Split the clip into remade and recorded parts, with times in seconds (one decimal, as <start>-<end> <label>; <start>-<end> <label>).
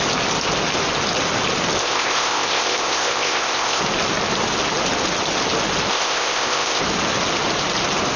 0.0-1.8 recorded; 1.8-3.8 remade; 3.8-5.9 recorded; 5.9-6.8 remade; 6.8-8.2 recorded